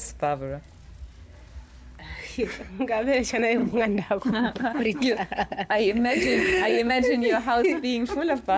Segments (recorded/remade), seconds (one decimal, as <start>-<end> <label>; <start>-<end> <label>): 0.0-3.6 recorded; 3.6-6.9 remade; 6.9-8.6 recorded